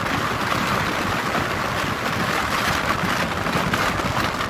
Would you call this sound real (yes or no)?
yes